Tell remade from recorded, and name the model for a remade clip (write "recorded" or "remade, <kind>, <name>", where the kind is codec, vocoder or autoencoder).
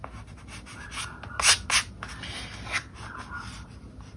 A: recorded